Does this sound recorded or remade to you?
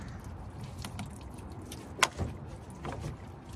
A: recorded